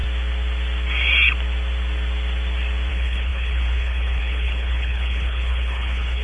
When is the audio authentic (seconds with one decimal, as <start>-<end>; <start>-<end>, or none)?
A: 0.0-2.9